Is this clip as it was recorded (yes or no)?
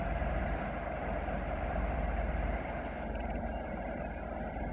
no